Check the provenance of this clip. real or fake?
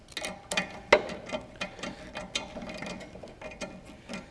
real